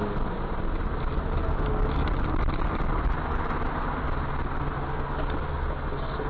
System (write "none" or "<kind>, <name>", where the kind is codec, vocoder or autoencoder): none